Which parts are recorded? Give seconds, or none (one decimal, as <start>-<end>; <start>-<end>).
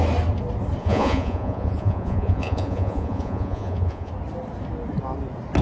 0.0-0.8; 4.1-5.6